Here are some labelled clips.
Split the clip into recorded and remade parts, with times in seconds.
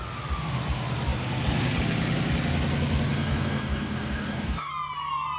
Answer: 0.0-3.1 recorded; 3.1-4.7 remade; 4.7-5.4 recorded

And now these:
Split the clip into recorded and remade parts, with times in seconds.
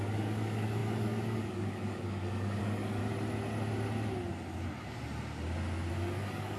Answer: 0.0-3.0 remade; 3.0-5.9 recorded; 5.9-6.6 remade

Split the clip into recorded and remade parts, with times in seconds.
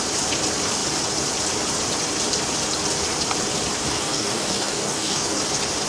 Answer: 0.0-3.8 recorded; 3.8-5.4 remade; 5.4-5.9 recorded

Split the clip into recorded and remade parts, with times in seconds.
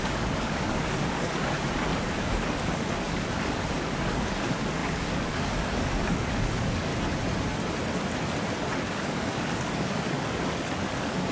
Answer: 0.0-6.9 remade; 6.9-8.8 recorded; 8.8-11.3 remade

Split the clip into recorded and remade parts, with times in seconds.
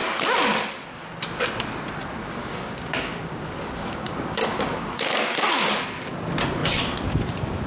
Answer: 0.0-2.2 recorded; 2.2-5.7 remade; 5.7-7.7 recorded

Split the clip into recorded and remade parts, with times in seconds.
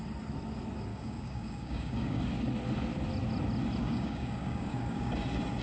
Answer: 0.0-0.9 recorded; 0.9-2.2 remade; 2.2-3.8 recorded; 3.8-5.1 remade; 5.1-5.6 recorded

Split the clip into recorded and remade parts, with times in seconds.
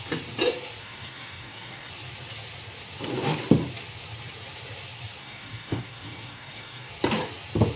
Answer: 0.0-0.8 recorded; 0.8-1.9 remade; 1.9-5.2 recorded; 5.2-6.9 remade; 6.9-7.8 recorded